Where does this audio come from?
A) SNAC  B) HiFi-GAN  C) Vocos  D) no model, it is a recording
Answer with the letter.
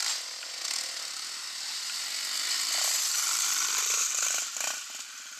D